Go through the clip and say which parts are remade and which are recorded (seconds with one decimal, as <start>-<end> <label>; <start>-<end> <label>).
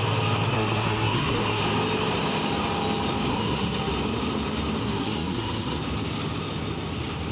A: 0.0-0.5 recorded; 0.5-1.6 remade; 1.6-3.3 recorded; 3.3-3.9 remade; 3.9-4.8 recorded; 4.8-5.8 remade; 5.8-7.3 recorded